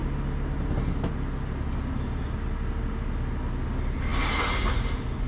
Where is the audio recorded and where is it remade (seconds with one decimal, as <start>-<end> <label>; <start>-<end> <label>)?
0.0-5.3 recorded